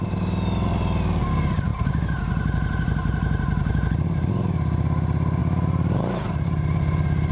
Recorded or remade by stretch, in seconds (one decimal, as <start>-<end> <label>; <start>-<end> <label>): 0.0-1.7 recorded; 1.7-4.3 remade; 4.3-5.4 recorded; 5.4-7.3 remade